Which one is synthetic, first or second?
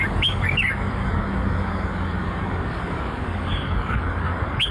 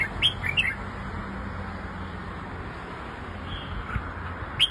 first